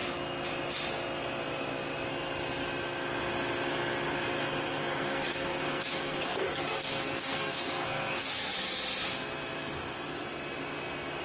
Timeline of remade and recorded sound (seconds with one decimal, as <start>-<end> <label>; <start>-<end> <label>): 0.0-4.4 recorded; 4.4-8.5 remade; 8.5-11.2 recorded